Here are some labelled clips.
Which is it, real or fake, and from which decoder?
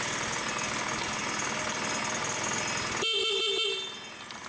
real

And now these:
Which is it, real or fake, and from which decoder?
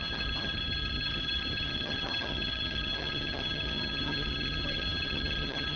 fake, vocoder, HiFi-GAN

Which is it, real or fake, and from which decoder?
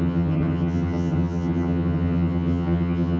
fake, vocoder, HiFi-GAN